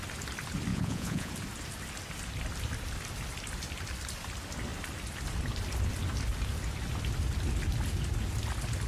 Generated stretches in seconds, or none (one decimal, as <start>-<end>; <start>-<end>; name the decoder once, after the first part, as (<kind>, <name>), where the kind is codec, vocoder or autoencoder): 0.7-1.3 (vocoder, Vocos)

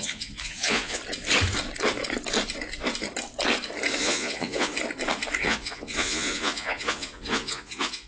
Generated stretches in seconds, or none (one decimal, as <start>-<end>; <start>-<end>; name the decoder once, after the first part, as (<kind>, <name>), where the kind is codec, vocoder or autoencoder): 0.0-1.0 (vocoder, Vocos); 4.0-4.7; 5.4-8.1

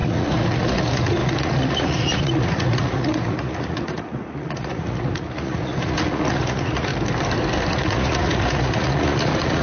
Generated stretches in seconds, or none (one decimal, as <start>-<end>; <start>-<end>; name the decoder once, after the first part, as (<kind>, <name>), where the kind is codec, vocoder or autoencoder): 0.0-6.9 (vocoder, Vocos); 7.7-9.6